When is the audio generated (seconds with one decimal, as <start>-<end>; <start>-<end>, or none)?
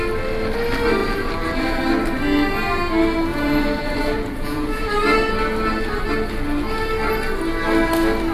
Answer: 1.0-1.8; 3.3-4.9